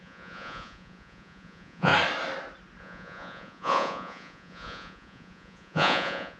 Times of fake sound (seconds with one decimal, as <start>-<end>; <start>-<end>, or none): 0.0-1.9; 2.8-6.4